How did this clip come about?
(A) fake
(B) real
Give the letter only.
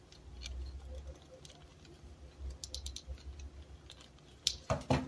B